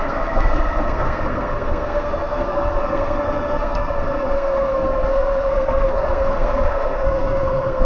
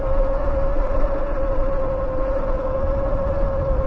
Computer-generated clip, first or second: first